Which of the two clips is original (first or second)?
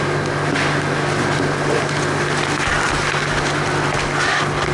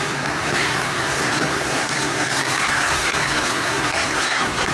first